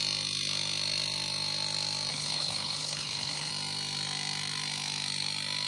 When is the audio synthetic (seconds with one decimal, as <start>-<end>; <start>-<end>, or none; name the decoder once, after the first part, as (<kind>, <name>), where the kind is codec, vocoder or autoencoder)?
2.1-3.5 (codec, HILCodec)